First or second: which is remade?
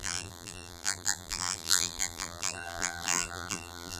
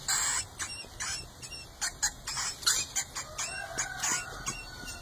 first